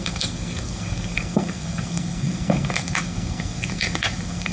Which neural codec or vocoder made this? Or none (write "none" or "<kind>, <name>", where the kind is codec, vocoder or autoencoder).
codec, SNAC